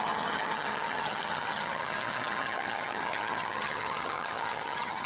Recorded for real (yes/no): no